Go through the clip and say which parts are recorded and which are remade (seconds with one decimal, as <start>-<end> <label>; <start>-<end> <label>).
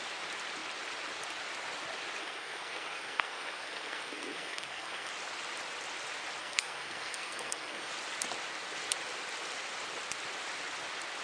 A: 0.0-2.2 recorded; 2.2-5.1 remade; 5.1-6.4 recorded; 6.4-7.9 remade; 7.9-11.2 recorded